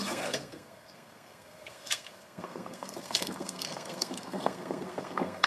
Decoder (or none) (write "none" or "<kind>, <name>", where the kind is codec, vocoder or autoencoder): codec, SNAC